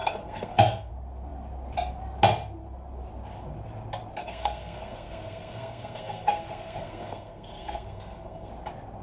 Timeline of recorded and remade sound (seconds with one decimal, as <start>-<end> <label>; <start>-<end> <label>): 0.0-0.9 remade; 0.9-4.2 recorded; 4.2-8.5 remade; 8.5-9.0 recorded